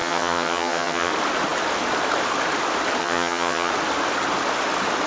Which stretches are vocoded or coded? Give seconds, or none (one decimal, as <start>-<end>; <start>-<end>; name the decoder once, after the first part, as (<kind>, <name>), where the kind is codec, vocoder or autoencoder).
0.0-1.1 (vocoder, HiFi-GAN); 3.0-3.7